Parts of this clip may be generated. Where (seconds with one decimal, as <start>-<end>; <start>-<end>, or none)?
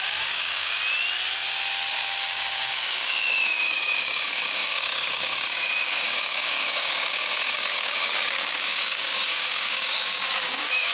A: 0.0-0.8; 1.9-10.9